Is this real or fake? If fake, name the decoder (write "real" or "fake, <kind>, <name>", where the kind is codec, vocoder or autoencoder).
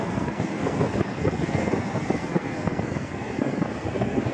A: fake, codec, SNAC